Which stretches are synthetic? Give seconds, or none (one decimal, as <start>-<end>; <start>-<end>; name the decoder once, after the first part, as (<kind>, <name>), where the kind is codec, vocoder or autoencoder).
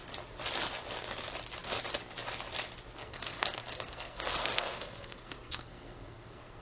3.0-6.6 (codec, SNAC)